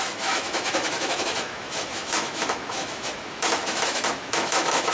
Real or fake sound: fake